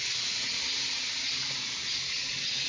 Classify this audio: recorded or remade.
recorded